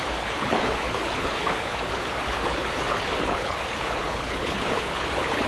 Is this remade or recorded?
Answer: remade